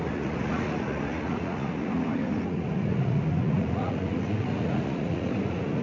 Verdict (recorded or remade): remade